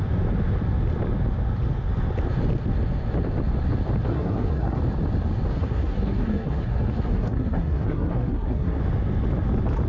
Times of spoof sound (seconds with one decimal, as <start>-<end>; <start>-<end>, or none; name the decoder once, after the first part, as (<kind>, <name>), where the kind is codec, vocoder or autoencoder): 4.1-4.8 (codec, SNAC); 5.5-8.8